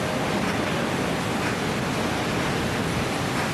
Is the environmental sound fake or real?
real